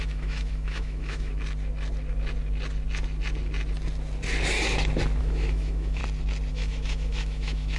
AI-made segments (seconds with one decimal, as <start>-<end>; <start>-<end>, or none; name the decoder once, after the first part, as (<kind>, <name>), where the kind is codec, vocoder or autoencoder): 0.0-1.3 (autoencoder, DAC-VAE); 5.2-6.0; 6.5-7.8